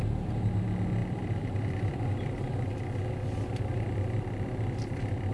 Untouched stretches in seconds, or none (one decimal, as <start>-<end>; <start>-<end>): 0.0-1.0; 4.2-5.3